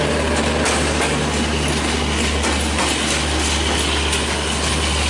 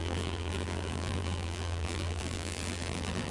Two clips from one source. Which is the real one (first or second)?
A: first